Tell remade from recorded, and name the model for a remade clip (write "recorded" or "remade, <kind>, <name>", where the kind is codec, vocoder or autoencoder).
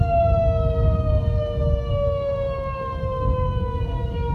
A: remade, codec, DAC